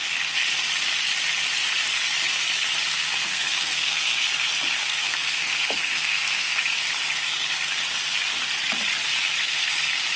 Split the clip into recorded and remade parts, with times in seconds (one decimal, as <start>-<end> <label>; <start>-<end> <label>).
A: 0.0-2.9 recorded; 2.9-4.3 remade; 4.3-4.8 recorded; 4.8-6.6 remade; 6.6-10.2 recorded